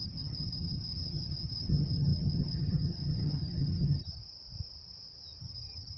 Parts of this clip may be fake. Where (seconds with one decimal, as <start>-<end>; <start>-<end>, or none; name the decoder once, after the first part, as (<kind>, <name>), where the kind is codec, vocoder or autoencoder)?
0.0-4.2 (vocoder, HiFi-GAN); 5.4-6.0